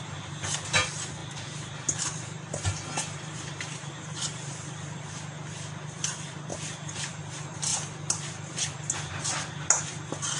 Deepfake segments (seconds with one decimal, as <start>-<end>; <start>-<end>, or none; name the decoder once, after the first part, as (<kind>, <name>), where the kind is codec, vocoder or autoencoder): 1.2-5.0 (vocoder, BigVGAN v2); 6.5-7.2